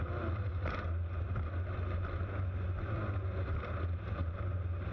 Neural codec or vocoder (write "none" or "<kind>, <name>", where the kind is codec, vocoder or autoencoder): none